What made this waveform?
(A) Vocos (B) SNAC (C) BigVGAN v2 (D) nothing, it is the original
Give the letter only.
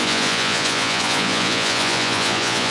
A